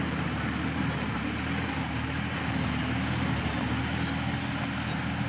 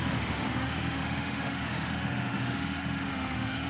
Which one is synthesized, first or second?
second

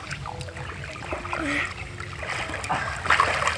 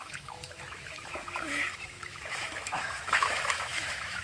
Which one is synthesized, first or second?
second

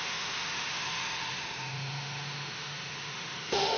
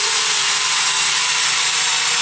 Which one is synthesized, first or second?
first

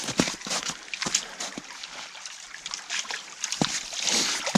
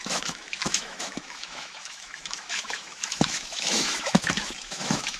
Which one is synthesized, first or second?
second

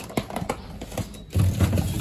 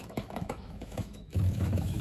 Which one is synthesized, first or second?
second